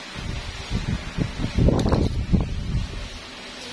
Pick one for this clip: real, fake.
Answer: real